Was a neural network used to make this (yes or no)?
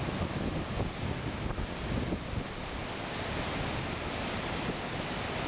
no